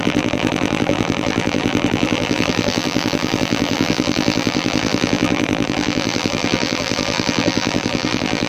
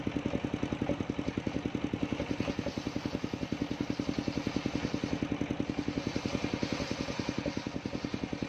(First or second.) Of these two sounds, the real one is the second